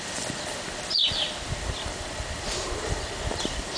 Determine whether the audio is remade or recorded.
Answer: recorded